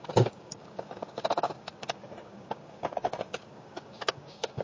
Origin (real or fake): fake